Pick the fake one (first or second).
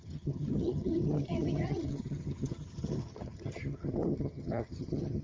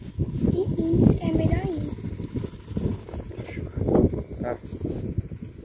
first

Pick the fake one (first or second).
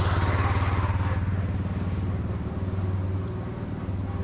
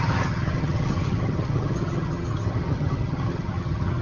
second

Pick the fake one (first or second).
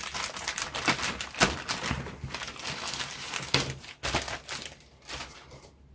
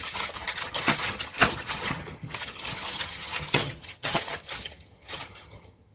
second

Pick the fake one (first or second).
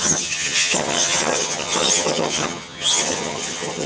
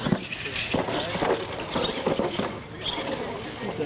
first